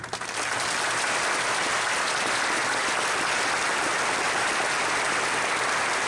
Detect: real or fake real